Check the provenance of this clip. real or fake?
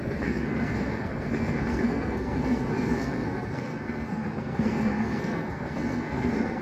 fake